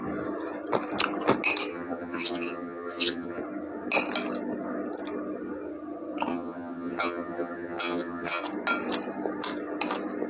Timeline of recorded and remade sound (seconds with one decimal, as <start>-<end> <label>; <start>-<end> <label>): 0.0-1.7 recorded; 1.7-3.4 remade; 3.4-6.3 recorded; 6.3-8.4 remade; 8.4-10.3 recorded